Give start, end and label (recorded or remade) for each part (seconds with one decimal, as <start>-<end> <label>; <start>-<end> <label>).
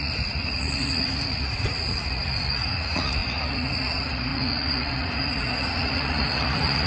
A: 0.0-6.9 remade